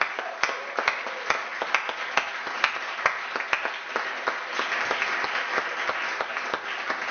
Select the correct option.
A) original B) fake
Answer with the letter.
A